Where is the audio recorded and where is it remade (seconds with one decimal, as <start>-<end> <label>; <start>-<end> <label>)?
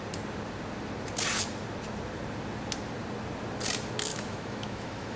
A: 0.0-4.1 recorded; 4.1-5.2 remade